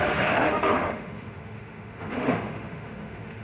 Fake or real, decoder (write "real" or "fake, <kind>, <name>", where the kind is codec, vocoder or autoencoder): fake, autoencoder, DAC-VAE